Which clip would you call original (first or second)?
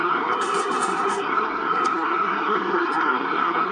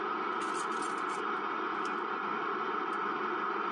second